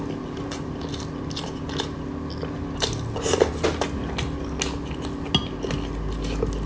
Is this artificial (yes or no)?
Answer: no